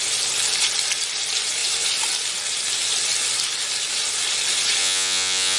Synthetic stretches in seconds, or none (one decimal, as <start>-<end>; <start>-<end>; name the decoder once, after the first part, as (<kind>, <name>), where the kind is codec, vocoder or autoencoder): 4.8-5.6 (vocoder, Vocos)